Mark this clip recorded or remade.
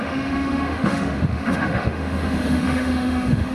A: remade